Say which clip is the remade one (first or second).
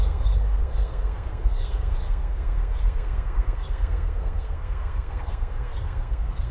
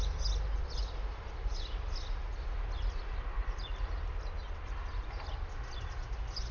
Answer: first